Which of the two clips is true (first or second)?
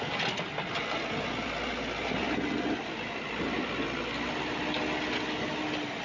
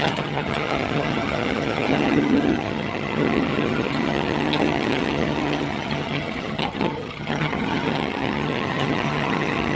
first